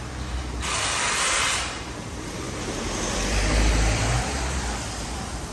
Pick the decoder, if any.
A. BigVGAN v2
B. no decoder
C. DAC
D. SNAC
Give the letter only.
A